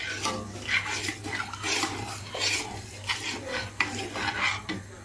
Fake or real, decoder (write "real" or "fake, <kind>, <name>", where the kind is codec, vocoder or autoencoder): real